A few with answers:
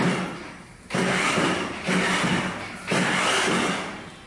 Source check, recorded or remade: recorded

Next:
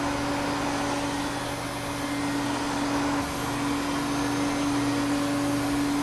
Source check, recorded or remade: recorded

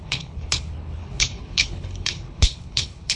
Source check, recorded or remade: remade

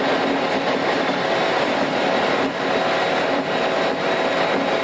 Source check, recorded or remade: recorded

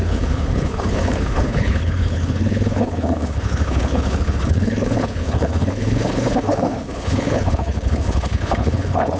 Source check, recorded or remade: remade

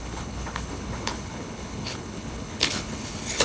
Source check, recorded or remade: remade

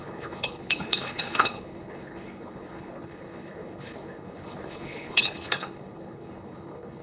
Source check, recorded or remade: remade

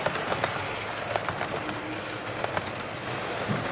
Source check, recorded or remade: recorded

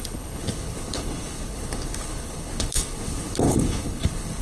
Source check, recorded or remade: remade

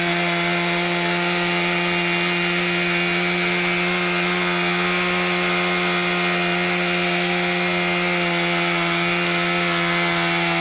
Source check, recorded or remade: recorded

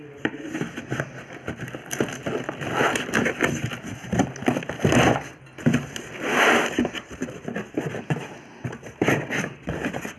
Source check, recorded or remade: recorded